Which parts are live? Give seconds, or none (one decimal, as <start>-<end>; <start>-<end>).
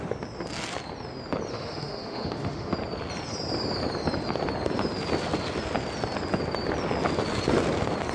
0.0-1.5; 2.7-8.1